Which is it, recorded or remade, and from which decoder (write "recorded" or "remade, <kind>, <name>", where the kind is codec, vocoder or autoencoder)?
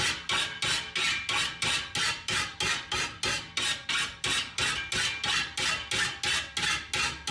recorded